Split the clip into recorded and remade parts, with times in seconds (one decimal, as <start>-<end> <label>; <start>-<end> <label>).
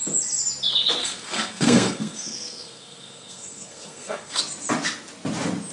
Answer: 0.0-1.0 recorded; 1.0-4.4 remade; 4.4-5.7 recorded